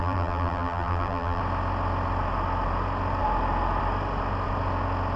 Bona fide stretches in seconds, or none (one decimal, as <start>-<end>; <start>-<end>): 1.4-5.2

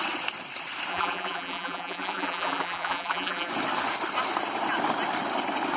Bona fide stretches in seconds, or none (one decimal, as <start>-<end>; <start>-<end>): 0.0-0.9; 3.5-5.8

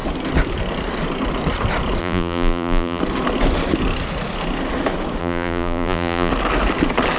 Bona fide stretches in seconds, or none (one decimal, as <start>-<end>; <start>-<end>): 0.0-2.0; 3.0-5.2; 6.3-7.2

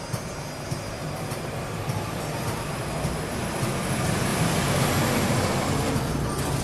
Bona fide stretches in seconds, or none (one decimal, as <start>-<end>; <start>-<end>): 0.0-1.0; 2.9-4.3; 4.9-6.6